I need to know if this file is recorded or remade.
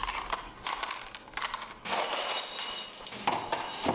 recorded